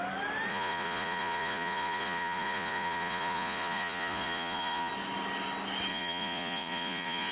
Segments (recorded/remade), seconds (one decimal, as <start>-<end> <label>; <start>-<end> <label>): 0.0-0.5 recorded; 0.5-4.9 remade; 4.9-5.9 recorded; 5.9-7.3 remade